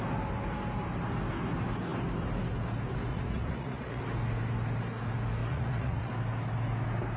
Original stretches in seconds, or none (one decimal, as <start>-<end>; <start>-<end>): 0.0-3.1; 4.0-5.4; 6.1-7.2